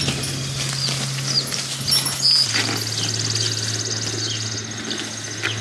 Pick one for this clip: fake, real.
real